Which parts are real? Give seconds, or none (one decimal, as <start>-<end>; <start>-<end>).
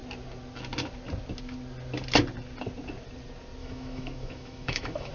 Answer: 0.0-3.6